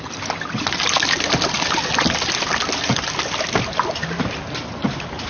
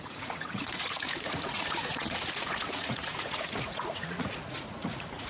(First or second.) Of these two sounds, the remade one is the second